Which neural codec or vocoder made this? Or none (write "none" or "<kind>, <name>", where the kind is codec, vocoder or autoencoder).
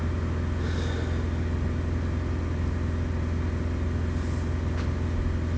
none